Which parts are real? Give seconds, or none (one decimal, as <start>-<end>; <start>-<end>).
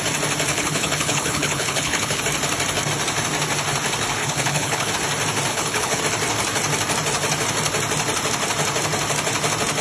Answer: 0.0-0.5; 2.2-4.2; 4.9-5.5; 6.0-9.8